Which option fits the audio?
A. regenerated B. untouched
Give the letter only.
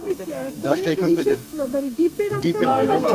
A